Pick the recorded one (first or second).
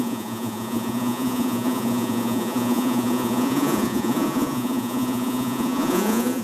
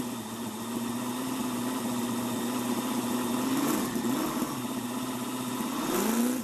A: second